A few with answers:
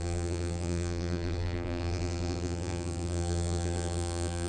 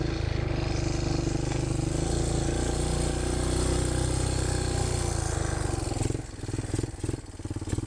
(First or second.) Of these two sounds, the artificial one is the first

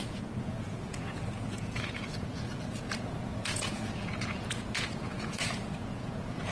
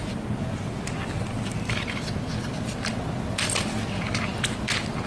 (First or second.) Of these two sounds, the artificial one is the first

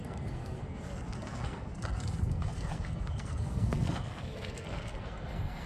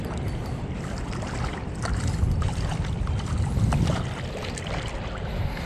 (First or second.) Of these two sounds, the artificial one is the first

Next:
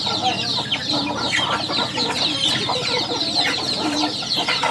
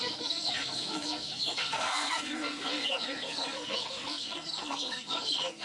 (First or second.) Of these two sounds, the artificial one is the second